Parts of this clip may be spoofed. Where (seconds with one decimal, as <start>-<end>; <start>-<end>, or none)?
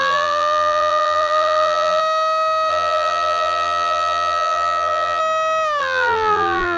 0.0-2.0; 2.7-5.2; 5.8-6.8